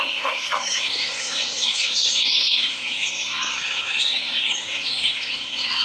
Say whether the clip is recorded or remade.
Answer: remade